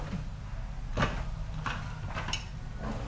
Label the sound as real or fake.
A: real